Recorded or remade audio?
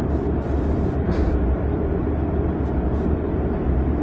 recorded